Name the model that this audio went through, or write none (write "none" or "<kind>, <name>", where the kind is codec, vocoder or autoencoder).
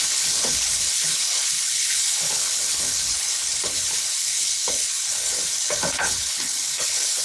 codec, HILCodec